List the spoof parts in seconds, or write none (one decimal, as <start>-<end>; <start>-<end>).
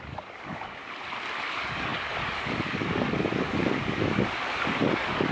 0.0-0.8; 1.5-5.3